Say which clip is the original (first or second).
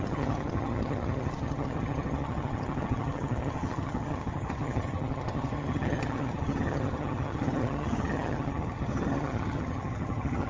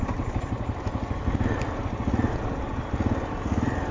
second